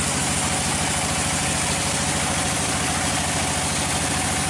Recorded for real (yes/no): yes